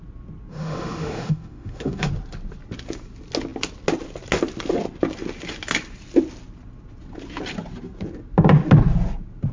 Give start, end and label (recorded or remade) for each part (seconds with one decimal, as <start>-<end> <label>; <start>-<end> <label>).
0.0-0.5 recorded; 0.5-2.1 remade; 2.1-9.5 recorded